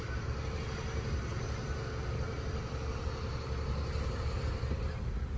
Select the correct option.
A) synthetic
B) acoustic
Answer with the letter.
B